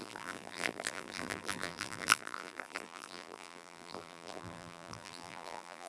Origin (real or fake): fake